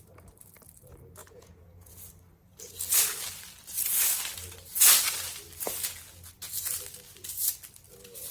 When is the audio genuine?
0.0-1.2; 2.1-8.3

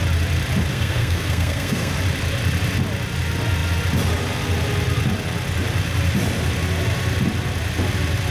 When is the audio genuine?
0.0-0.7; 1.9-8.3